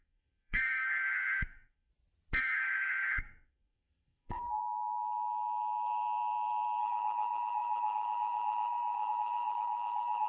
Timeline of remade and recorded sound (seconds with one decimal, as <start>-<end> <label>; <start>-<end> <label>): 0.0-1.9 remade; 1.9-2.4 recorded; 2.4-4.6 remade; 4.6-6.8 recorded; 6.8-10.3 remade